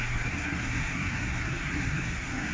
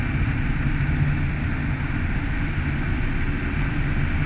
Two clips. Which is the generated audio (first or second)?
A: first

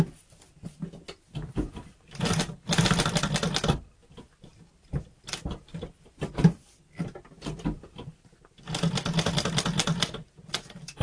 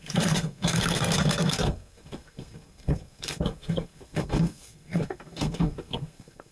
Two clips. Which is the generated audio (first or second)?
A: second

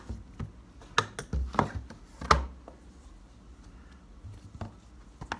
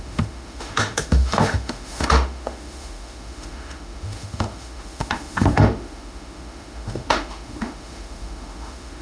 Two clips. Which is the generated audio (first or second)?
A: second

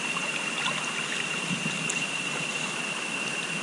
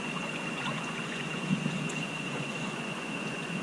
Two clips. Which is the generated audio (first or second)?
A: second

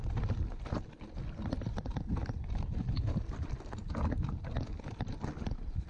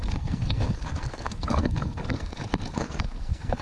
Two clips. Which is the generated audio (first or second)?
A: second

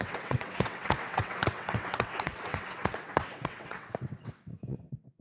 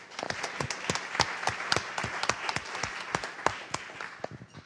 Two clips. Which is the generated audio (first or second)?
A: first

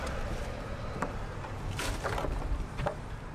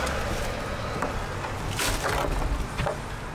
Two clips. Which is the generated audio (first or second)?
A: first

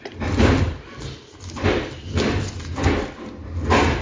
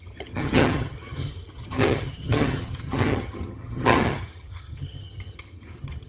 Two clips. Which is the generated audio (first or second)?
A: second